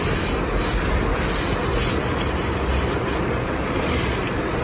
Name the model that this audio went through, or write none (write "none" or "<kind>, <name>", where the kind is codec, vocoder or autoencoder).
none